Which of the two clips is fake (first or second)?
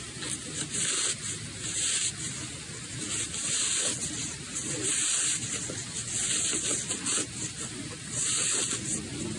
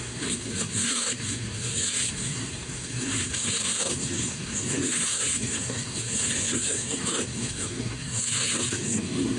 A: second